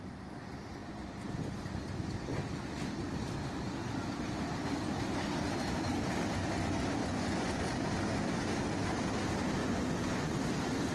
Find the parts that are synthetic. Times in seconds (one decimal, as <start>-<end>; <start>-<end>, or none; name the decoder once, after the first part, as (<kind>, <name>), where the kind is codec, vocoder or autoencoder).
7.0-7.7 (vocoder, Vocos); 9.6-10.4